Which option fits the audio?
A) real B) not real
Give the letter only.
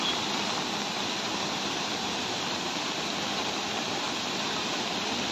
A